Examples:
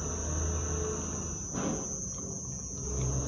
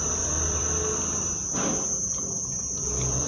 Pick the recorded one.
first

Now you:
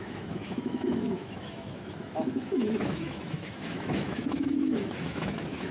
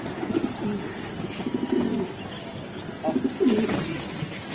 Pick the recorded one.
second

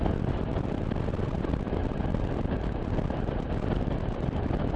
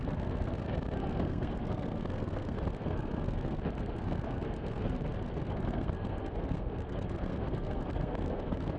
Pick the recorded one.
first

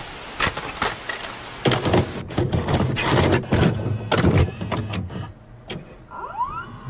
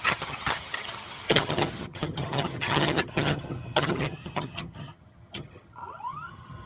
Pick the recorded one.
first